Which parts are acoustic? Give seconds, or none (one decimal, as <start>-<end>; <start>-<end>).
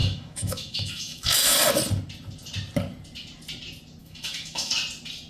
1.6-4.0; 4.7-5.3